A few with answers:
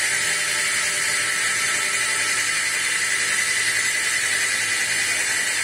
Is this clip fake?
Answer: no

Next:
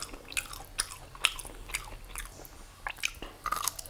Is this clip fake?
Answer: no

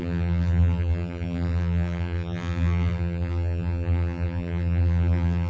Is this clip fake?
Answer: yes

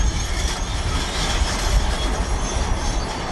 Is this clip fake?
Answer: no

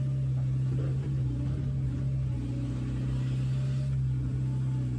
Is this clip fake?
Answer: no